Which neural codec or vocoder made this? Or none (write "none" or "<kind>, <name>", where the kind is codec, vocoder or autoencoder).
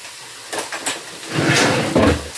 none